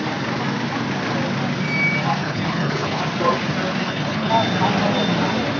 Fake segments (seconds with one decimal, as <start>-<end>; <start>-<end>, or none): 2.2-3.0; 3.8-4.3